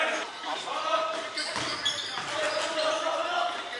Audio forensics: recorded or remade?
remade